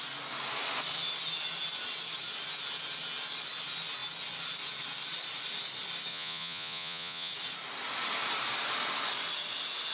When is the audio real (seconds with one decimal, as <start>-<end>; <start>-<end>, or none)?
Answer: 0.0-6.1; 7.3-9.9